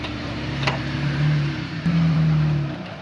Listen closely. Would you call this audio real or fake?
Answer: fake